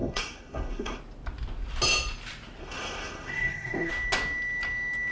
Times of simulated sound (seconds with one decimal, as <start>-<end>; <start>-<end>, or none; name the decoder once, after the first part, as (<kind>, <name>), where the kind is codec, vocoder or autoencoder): 0.0-1.0 (codec, SNAC); 2.6-3.9